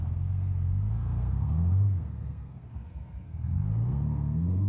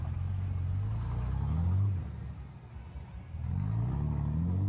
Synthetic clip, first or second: first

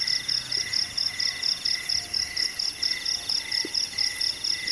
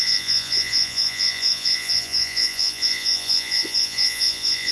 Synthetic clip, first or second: second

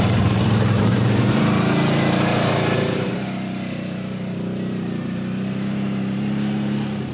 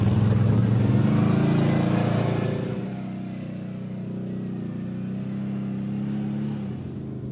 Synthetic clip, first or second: first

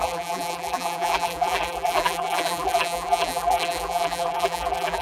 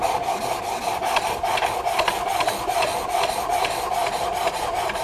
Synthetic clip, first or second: first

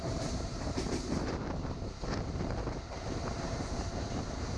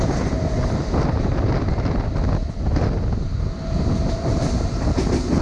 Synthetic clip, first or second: first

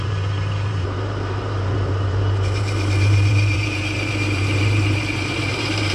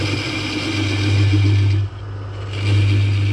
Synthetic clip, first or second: first